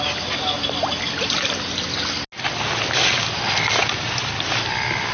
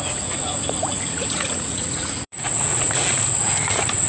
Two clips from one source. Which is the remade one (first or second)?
second